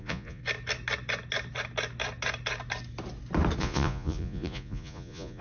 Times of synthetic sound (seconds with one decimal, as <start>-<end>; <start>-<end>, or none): 0.0-0.4; 3.6-5.4